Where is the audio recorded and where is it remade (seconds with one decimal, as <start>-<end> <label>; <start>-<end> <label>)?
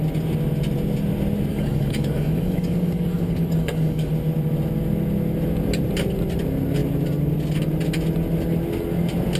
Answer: 0.0-1.5 recorded; 1.5-4.1 remade; 4.1-9.4 recorded